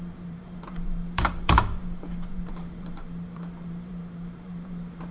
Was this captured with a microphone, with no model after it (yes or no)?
no